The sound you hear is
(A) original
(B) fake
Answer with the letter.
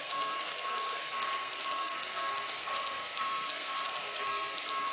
B